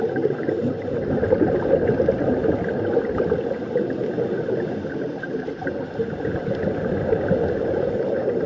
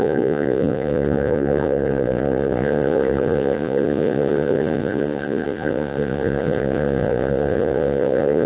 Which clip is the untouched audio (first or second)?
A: first